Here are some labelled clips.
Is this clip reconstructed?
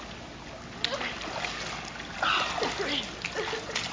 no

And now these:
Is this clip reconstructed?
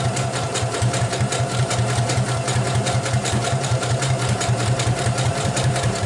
yes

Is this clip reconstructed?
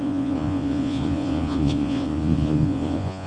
yes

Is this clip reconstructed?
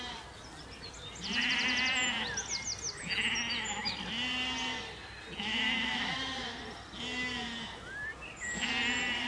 no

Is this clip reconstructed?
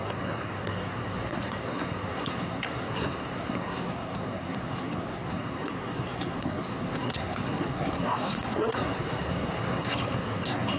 yes